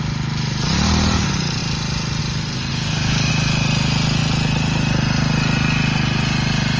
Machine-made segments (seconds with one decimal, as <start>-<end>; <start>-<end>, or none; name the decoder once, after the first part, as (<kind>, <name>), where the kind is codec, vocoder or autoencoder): 2.7-3.3 (codec, DAC)